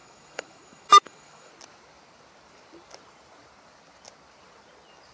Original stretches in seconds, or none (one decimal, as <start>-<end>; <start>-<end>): 1.5-5.1